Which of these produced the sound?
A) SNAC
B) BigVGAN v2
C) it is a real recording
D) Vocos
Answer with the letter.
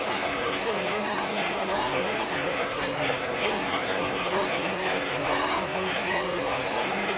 A